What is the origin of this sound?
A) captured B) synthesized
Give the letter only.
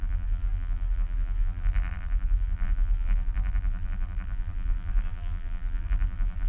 B